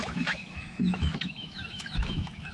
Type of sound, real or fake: fake